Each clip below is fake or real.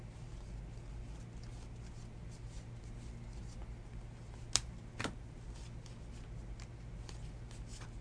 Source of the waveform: real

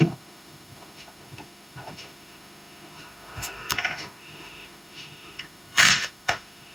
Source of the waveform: fake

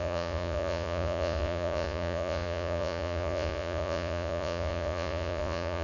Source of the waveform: fake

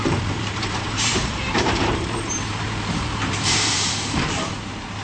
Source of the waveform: fake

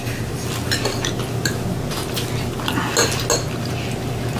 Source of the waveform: real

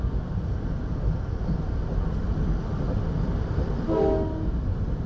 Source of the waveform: real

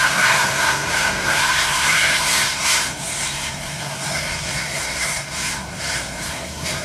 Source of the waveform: fake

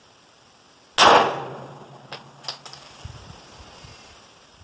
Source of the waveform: real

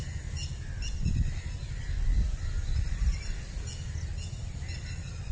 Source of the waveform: real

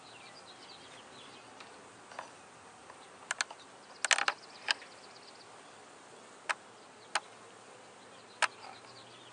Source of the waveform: real